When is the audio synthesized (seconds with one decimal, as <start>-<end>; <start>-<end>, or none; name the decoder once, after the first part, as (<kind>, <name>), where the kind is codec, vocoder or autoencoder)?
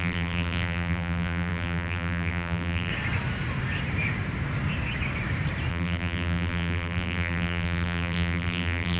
0.0-2.9 (vocoder, BigVGAN v2); 5.7-9.0